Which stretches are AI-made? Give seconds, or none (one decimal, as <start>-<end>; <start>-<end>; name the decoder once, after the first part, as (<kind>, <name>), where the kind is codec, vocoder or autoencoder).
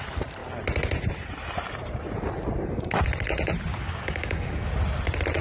3.7-4.7 (codec, DAC)